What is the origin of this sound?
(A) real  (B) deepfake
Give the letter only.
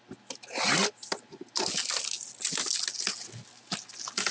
A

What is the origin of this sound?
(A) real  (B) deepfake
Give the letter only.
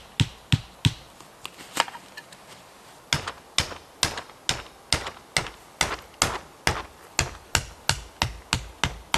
A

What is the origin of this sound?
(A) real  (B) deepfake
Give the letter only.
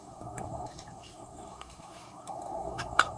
B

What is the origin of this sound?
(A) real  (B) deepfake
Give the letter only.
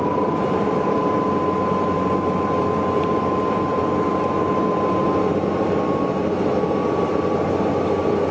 A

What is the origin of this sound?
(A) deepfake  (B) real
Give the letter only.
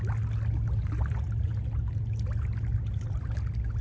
B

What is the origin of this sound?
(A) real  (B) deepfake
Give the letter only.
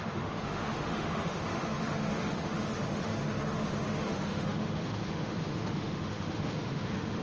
B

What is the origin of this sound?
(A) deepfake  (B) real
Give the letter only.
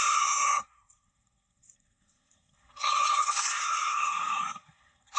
A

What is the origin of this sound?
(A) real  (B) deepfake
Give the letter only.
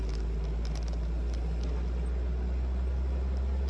A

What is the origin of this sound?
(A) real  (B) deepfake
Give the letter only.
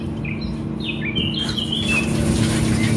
A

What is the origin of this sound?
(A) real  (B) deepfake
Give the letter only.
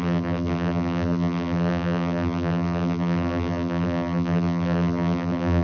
B